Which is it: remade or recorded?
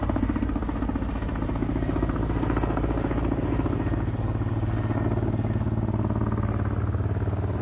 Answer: recorded